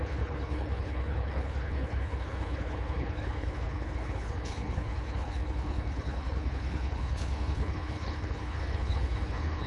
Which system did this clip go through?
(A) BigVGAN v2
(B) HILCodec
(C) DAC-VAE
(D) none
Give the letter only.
B